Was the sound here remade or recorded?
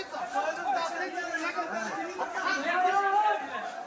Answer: recorded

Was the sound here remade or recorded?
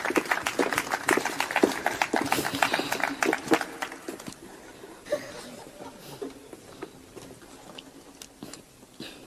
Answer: recorded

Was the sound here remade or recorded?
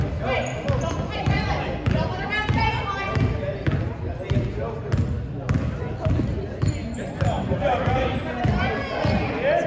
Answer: recorded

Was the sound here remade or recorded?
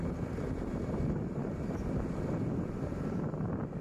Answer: recorded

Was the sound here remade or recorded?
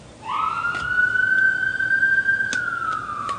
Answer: recorded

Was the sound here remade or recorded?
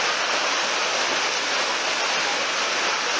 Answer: recorded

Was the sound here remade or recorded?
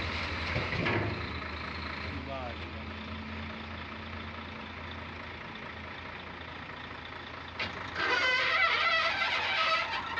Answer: recorded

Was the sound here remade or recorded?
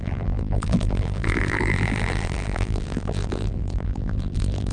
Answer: remade